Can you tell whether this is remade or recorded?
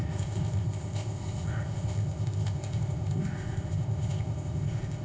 remade